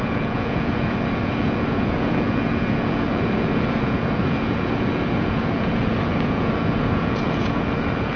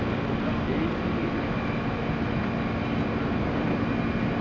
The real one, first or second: second